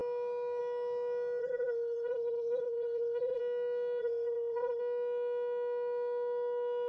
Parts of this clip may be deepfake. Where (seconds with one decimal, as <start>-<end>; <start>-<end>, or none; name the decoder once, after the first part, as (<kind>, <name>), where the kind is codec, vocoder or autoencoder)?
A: 1.4-3.4 (codec, SNAC); 4.0-4.8